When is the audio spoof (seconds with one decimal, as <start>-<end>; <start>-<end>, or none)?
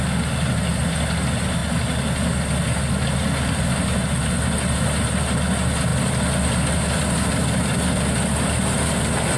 none